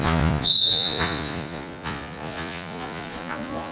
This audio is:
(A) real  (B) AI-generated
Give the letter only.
B